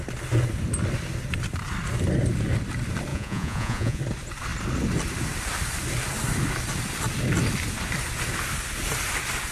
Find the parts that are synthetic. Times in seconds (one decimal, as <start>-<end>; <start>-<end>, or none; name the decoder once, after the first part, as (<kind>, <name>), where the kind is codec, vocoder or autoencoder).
3.1-4.0 (vocoder, Vocos)